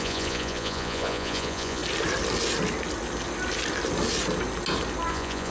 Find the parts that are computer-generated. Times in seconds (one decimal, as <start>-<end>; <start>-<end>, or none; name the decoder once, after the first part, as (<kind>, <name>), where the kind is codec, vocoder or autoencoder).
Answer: 0.0-1.8 (vocoder, Vocos); 5.1-5.5